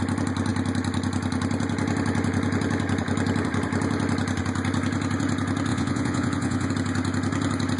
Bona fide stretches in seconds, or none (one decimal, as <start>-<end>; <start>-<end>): 0.0-5.7; 6.7-7.8